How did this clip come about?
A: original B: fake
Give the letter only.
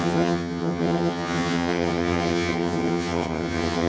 B